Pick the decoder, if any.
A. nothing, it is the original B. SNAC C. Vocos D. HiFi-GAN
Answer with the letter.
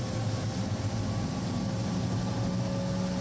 A